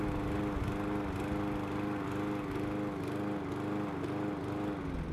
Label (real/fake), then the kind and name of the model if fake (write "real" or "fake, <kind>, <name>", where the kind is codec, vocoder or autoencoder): real